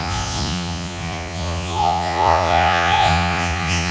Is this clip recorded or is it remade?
remade